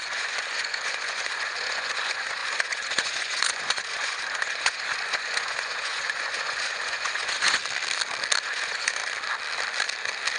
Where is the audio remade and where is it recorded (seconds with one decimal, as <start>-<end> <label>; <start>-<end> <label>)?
0.0-7.6 remade; 7.6-8.4 recorded; 8.4-9.0 remade; 9.0-10.4 recorded